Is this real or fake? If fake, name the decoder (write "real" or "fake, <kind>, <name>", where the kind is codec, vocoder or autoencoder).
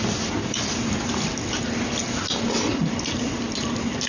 real